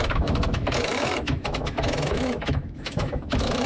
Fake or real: fake